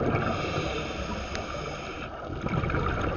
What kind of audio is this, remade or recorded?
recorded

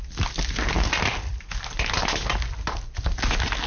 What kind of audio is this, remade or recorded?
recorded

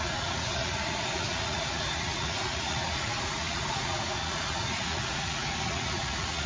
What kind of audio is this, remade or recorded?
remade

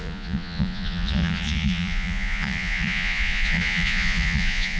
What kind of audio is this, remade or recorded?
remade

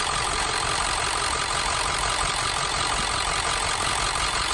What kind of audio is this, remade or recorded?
recorded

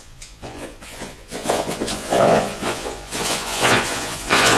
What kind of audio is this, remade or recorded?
remade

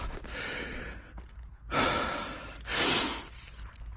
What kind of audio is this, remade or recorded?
recorded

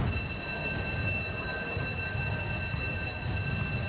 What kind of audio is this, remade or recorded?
recorded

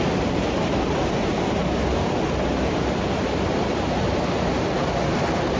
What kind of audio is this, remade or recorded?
recorded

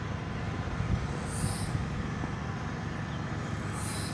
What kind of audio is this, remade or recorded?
recorded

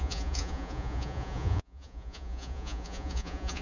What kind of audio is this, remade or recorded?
remade